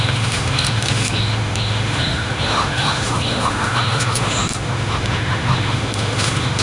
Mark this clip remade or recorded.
remade